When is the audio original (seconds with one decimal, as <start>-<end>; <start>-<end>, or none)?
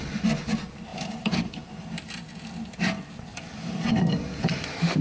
0.0-0.9; 2.1-3.3; 4.6-5.0